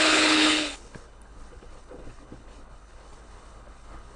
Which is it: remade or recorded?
remade